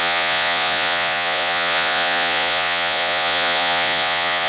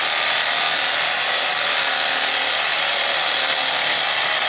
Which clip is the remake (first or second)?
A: first